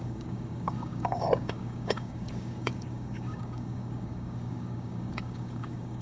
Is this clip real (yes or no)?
no